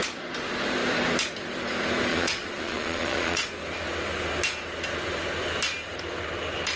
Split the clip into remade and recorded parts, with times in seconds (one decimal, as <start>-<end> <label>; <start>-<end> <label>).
0.0-2.1 recorded; 2.1-3.5 remade; 3.5-6.8 recorded